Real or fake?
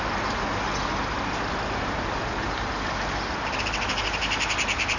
real